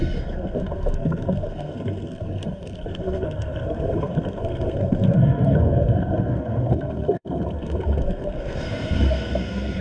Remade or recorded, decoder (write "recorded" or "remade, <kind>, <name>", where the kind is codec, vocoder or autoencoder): remade, codec, SNAC